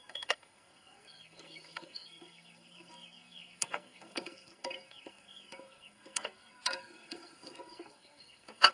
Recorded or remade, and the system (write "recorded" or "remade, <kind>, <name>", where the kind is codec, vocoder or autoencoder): remade, codec, SNAC